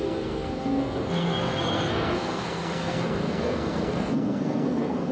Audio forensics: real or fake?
fake